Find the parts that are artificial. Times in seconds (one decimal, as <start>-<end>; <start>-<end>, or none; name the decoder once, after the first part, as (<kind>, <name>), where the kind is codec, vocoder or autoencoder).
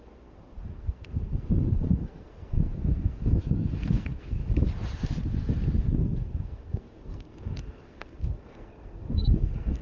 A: 0.0-4.4 (codec, SNAC); 5.8-9.8